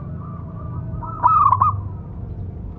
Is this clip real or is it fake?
real